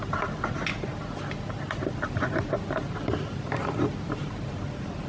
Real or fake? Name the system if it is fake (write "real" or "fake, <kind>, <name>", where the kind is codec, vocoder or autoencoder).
real